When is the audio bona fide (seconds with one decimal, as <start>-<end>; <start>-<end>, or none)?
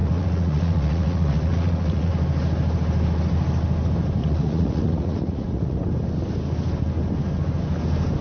2.1-4.2; 5.8-8.2